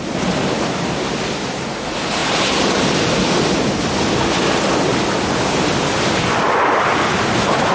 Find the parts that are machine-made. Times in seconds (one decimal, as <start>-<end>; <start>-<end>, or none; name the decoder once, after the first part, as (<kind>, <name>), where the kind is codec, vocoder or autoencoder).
none